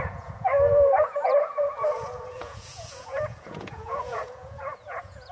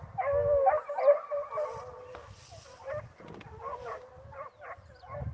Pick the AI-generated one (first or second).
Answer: first